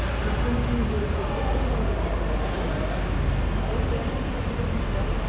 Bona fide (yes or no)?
yes